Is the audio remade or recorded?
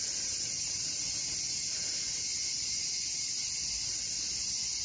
recorded